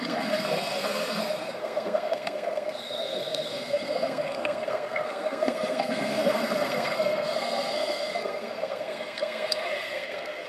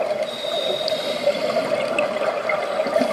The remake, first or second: first